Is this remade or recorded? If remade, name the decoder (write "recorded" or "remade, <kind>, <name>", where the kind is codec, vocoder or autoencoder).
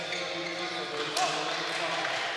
recorded